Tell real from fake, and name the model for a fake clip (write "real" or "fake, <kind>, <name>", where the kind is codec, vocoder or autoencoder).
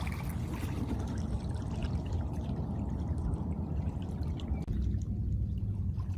real